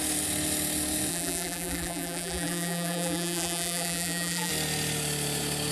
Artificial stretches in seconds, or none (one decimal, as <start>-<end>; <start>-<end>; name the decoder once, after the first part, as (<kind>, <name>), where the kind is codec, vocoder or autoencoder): 1.1-4.5 (vocoder, BigVGAN v2)